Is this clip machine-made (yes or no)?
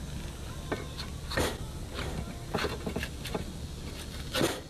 no